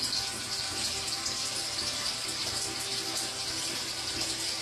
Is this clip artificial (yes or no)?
no